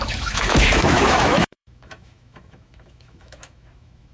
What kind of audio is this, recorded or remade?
remade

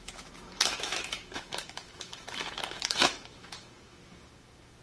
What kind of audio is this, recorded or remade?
remade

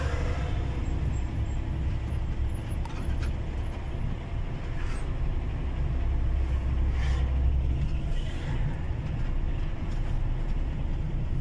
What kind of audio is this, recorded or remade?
recorded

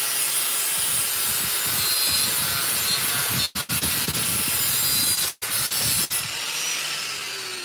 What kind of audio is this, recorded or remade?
recorded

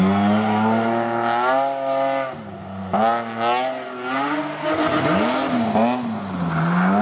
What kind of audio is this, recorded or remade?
recorded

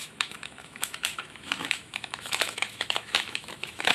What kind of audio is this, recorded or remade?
remade